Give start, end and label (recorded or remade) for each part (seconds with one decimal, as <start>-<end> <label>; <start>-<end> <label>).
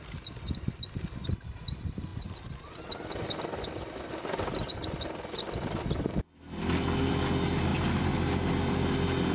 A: 0.0-9.3 recorded